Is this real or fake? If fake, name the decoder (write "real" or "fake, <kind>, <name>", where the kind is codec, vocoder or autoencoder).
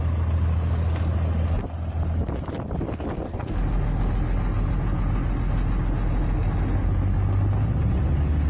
real